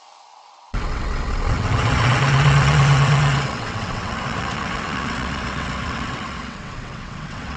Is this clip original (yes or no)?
no